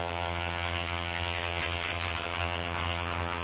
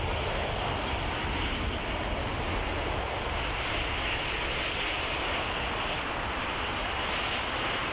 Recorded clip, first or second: second